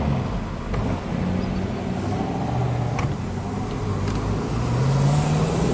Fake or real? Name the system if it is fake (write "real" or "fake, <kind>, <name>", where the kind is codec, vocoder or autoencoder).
real